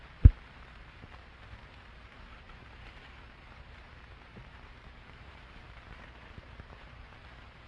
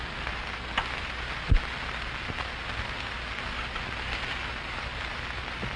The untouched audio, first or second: second